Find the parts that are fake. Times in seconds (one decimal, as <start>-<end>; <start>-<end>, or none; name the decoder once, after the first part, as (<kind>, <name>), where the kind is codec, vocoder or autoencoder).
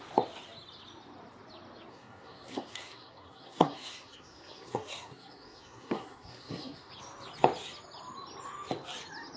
1.9-6.9 (codec, SNAC)